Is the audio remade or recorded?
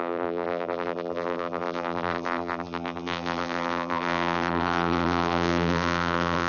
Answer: remade